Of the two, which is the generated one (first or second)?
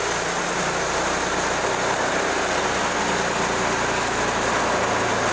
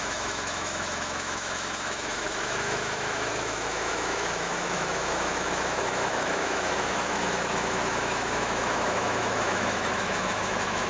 second